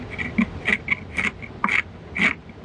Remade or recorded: recorded